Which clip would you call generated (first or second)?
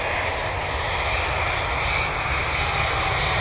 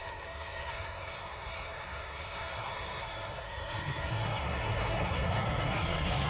second